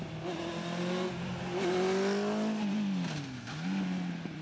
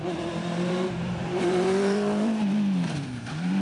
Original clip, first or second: first